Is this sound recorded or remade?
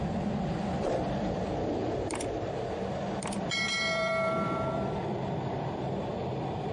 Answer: remade